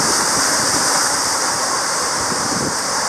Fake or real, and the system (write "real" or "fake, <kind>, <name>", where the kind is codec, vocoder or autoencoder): fake, vocoder, BigVGAN v2